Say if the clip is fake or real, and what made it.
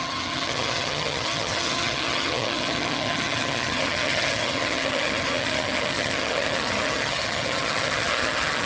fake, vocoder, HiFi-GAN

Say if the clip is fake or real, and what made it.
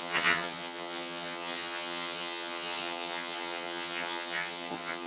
fake, vocoder, HiFi-GAN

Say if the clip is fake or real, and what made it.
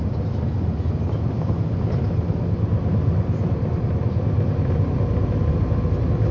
real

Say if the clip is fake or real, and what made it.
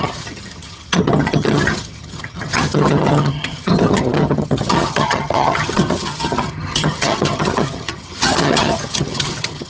fake, vocoder, HiFi-GAN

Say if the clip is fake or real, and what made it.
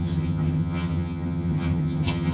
fake, vocoder, HiFi-GAN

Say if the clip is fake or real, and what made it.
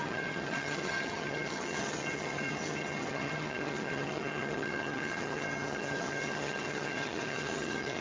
fake, vocoder, HiFi-GAN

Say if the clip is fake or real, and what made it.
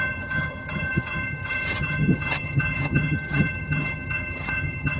fake, vocoder, HiFi-GAN